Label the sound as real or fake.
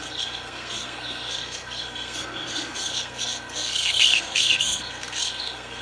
fake